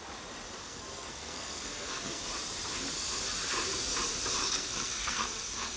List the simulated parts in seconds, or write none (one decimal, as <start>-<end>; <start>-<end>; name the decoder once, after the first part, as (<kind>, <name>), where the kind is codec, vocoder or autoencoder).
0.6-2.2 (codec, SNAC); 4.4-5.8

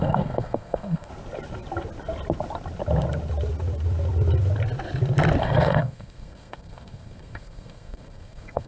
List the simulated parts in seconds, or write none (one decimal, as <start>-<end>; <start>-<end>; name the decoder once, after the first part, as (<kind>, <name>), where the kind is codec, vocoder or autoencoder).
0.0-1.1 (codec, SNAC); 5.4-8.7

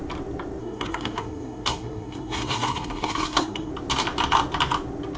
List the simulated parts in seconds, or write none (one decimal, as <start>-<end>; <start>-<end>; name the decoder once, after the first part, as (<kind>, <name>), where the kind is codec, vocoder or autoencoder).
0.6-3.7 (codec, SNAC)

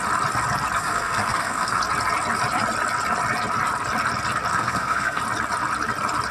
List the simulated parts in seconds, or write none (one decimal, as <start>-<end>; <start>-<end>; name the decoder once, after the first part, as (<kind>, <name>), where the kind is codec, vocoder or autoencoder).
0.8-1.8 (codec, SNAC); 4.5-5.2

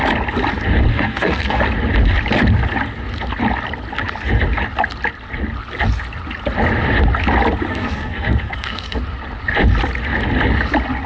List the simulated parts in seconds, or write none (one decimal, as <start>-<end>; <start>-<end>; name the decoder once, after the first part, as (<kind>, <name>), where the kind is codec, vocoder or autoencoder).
0.9-1.6 (codec, SNAC); 7.7-9.0

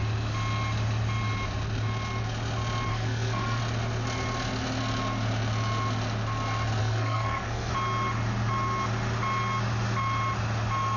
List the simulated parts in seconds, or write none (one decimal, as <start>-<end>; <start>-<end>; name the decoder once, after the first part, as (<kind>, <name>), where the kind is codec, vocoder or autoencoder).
2.9-3.6 (codec, SNAC); 6.8-7.7

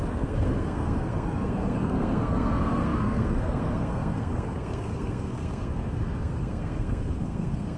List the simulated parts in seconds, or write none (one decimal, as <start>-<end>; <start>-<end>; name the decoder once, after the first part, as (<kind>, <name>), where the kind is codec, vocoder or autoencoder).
0.0-7.8 (codec, SNAC)